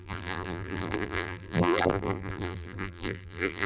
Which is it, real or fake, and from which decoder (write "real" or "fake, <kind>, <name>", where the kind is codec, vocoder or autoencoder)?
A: fake, vocoder, BigVGAN v2